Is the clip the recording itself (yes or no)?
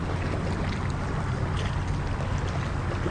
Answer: yes